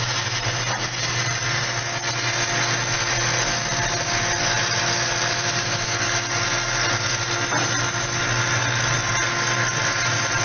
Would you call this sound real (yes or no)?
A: yes